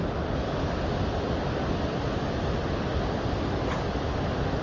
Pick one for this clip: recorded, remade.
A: recorded